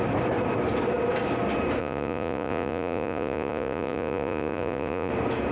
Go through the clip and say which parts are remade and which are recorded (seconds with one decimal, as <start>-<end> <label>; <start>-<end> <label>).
0.0-1.8 recorded; 1.8-5.1 remade; 5.1-5.5 recorded